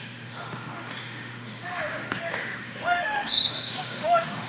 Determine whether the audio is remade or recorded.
remade